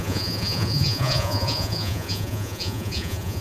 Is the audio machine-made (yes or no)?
yes